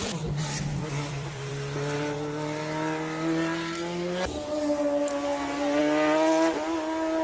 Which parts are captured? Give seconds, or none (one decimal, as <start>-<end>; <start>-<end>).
0.0-0.7; 1.5-7.2